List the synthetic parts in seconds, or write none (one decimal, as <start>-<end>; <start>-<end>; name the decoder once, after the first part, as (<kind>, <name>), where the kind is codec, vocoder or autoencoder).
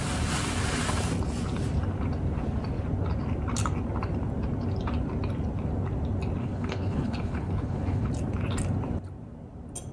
6.4-8.1 (codec, HILCodec)